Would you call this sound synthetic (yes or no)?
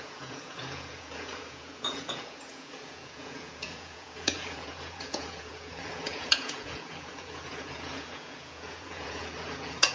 yes